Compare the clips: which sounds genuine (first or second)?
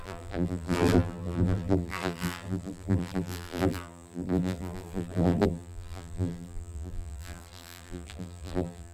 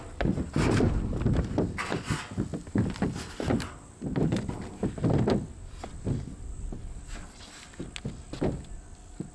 second